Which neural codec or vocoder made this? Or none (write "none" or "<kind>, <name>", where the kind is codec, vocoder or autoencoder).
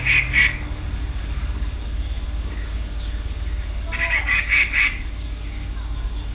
codec, DAC